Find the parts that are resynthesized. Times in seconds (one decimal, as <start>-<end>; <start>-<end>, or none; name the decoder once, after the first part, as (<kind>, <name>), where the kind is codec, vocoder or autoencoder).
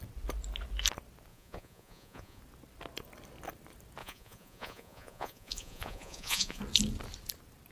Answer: 1.3-2.4 (vocoder, Vocos); 4.0-6.6